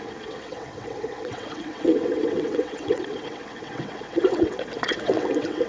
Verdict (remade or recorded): remade